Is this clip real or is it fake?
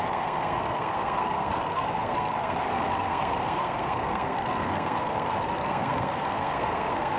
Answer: fake